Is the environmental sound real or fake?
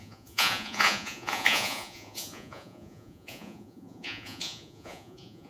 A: fake